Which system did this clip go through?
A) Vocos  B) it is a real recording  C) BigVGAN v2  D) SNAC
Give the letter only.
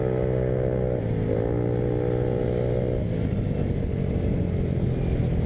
B